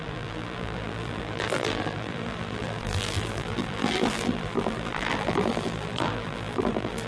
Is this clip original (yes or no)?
no